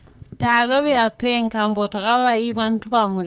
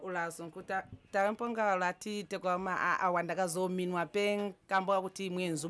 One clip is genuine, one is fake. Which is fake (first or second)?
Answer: first